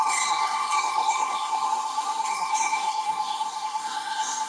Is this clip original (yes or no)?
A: no